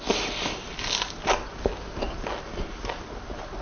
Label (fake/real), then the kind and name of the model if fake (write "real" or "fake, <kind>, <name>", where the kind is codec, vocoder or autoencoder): real